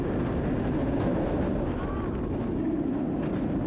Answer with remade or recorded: recorded